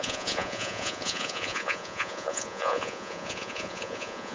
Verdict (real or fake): fake